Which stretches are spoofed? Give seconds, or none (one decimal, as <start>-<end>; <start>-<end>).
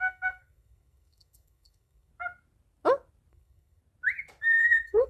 0.0-2.1; 3.3-3.8; 4.4-5.1